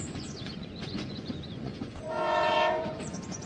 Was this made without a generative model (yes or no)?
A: no